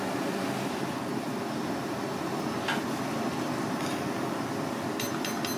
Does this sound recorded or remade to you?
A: recorded